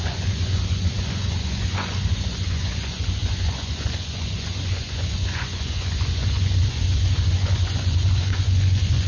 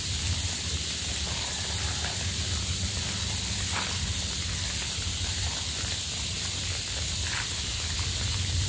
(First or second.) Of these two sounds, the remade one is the first